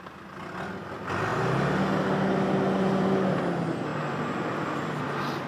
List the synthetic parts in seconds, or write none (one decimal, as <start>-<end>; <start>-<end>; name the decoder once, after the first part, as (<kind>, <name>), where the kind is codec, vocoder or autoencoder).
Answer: 3.9-5.0 (vocoder, BigVGAN v2)